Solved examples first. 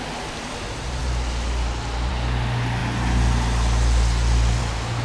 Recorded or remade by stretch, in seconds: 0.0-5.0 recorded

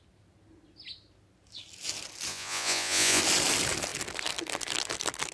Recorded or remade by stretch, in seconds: 0.0-2.3 recorded; 2.3-3.2 remade; 3.2-5.3 recorded

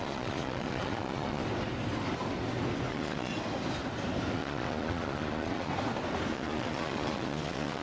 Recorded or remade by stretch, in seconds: 0.0-1.4 remade; 1.4-2.9 recorded; 2.9-3.3 remade; 3.3-4.3 recorded; 4.3-5.7 remade; 5.7-6.3 recorded; 6.3-7.8 remade

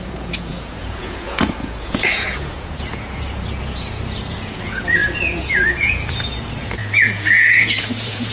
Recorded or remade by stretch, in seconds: 0.0-8.3 remade

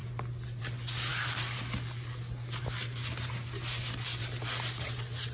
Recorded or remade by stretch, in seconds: 0.0-5.3 recorded

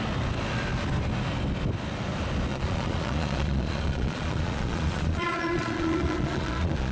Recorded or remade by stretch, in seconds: 0.0-2.5 recorded; 2.5-6.9 remade

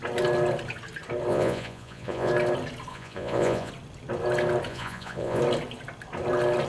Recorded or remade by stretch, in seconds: 0.0-1.3 recorded; 1.3-2.3 remade; 2.3-2.9 recorded; 2.9-3.7 remade; 3.7-4.7 recorded; 4.7-5.4 remade; 5.4-6.7 recorded

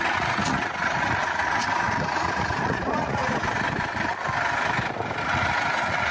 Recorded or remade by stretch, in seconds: 0.0-3.2 remade; 3.2-5.2 recorded; 5.2-6.1 remade